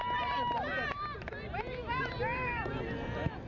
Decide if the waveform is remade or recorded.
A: recorded